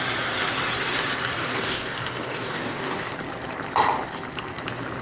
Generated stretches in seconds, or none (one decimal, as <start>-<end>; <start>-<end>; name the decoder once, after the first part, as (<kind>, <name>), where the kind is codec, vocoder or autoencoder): 1.4-3.1 (codec, DAC)